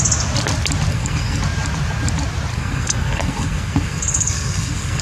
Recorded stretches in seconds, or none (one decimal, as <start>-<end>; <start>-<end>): 0.0-0.9; 1.4-2.5